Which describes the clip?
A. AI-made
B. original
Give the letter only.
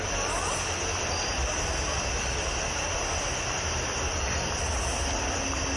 B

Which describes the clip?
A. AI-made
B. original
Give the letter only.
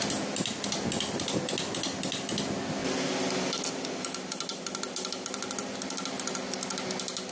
B